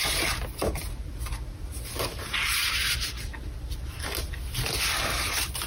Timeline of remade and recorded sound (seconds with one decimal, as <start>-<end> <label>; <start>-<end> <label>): 0.0-2.1 recorded; 2.1-2.8 remade; 2.8-5.7 recorded